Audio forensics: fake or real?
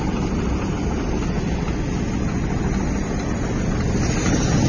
real